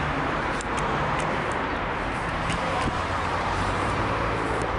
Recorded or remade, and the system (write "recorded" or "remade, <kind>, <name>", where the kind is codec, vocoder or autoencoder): remade, vocoder, BigVGAN v2